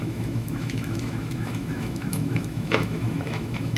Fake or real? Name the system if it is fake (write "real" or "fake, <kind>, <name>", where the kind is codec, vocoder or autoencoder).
fake, autoencoder, DAC-VAE